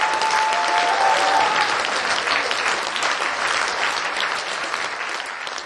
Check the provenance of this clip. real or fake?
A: real